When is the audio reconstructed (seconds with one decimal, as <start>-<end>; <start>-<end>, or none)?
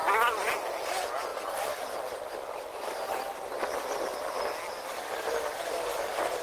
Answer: none